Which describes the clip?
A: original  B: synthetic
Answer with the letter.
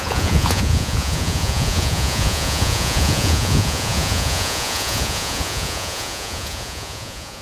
B